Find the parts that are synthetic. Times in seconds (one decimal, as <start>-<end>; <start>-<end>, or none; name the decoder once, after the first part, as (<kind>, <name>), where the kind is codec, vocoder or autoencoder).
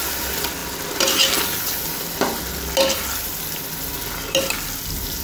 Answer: none